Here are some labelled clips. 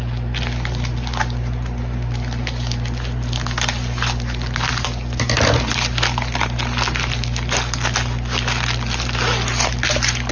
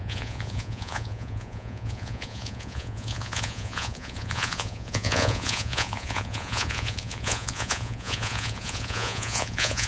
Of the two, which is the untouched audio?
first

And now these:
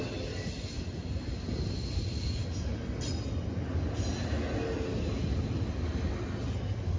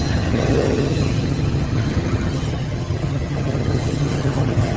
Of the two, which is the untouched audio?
first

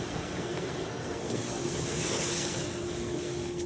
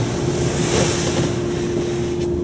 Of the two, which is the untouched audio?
second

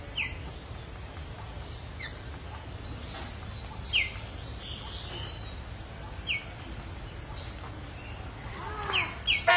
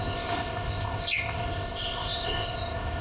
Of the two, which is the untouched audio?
first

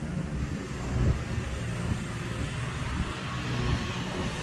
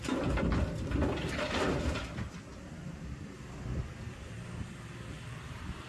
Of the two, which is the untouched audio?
first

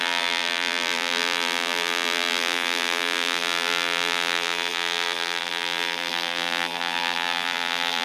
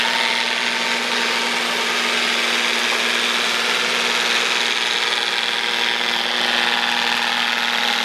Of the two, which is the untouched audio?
second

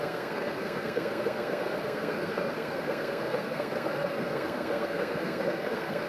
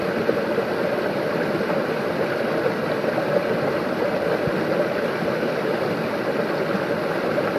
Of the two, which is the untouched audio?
second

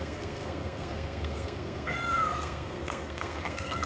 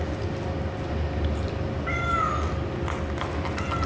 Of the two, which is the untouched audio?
second